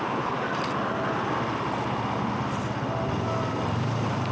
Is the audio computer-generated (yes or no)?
no